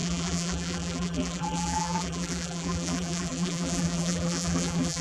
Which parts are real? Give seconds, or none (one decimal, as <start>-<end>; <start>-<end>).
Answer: none